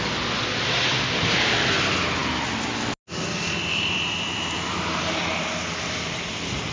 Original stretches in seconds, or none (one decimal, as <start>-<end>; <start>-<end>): 0.0-6.7